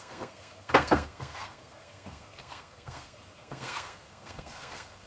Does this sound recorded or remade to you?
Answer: remade